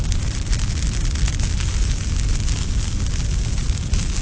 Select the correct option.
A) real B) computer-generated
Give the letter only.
A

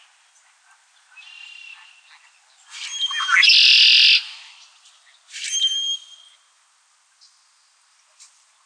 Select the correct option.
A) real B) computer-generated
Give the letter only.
A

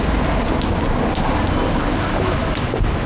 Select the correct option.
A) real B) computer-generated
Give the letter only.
A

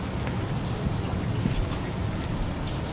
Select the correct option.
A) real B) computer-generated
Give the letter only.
A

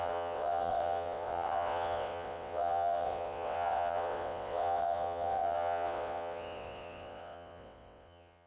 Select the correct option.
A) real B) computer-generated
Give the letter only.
B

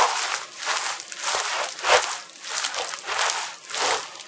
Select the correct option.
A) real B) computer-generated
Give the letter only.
A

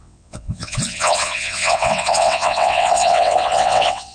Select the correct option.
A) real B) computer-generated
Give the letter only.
B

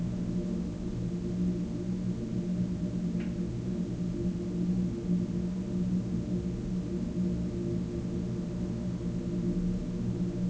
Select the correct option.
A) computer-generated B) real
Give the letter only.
B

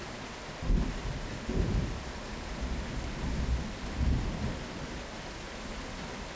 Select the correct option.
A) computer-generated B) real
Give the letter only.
B